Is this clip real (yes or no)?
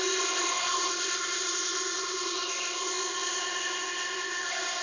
no